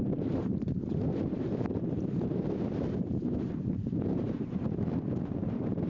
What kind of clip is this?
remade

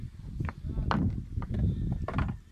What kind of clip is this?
recorded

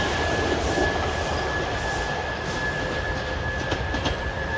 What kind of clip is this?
remade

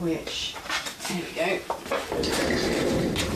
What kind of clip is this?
remade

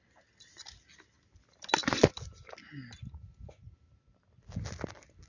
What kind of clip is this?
recorded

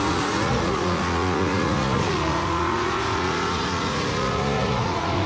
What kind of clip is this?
remade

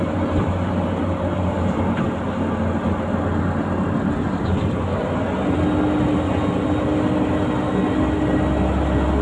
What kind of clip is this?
recorded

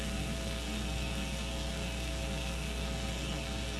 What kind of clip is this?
remade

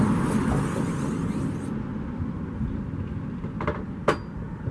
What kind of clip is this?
recorded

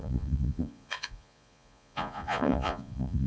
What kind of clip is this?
remade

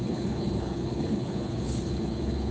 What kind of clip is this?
remade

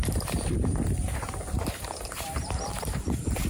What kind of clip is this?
remade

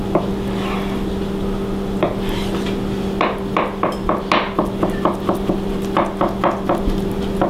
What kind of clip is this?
recorded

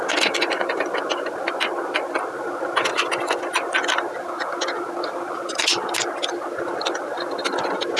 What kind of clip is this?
recorded